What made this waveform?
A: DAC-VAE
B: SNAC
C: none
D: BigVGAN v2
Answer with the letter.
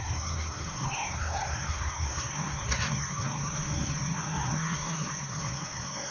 B